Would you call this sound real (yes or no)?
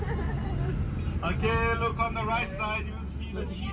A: yes